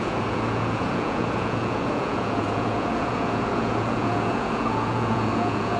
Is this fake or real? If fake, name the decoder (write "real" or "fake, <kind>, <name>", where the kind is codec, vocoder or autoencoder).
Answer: fake, vocoder, Vocos